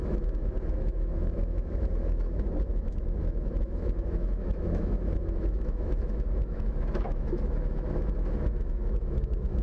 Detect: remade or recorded remade